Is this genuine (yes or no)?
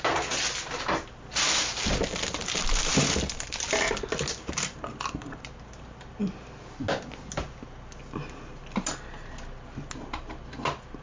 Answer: yes